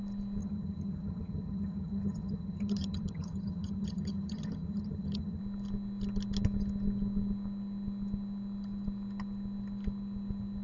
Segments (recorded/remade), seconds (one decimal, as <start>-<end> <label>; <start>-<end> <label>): 0.0-0.4 recorded; 0.4-5.4 remade; 5.4-10.6 recorded